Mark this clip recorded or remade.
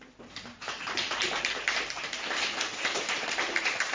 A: remade